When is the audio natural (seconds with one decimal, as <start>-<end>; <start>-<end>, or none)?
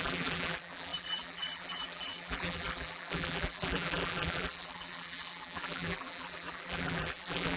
none